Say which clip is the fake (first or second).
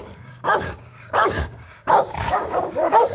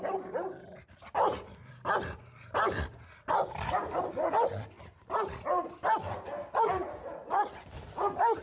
first